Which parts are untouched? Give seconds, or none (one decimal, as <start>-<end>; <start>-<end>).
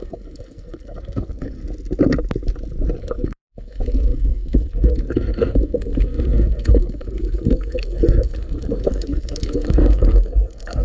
1.6-3.0